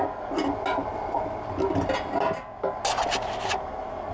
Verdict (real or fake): real